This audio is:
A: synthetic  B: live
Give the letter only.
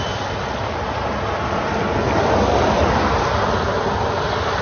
B